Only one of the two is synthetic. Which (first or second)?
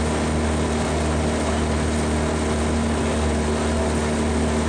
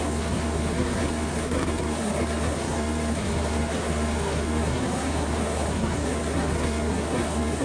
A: second